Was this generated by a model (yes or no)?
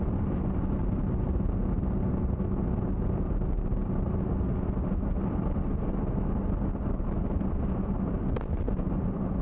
no